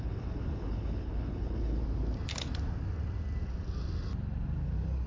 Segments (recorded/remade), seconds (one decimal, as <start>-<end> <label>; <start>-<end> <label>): 0.0-1.8 remade; 1.8-5.1 recorded